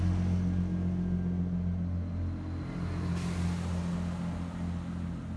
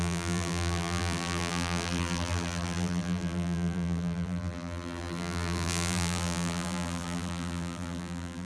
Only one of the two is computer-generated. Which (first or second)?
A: second